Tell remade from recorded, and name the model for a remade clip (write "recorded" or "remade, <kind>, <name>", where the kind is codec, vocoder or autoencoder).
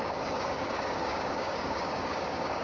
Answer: remade, codec, DAC